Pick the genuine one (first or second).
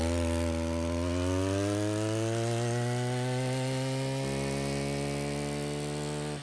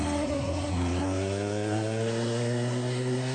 first